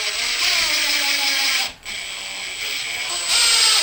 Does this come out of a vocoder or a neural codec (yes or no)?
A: no